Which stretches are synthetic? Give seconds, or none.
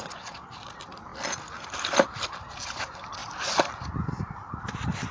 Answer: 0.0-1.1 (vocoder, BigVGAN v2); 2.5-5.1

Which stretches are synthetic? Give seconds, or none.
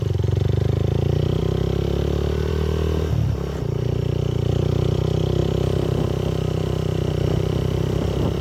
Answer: none